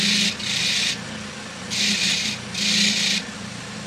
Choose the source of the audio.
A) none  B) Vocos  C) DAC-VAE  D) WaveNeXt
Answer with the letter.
A